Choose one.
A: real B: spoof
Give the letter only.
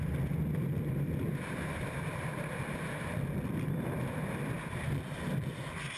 A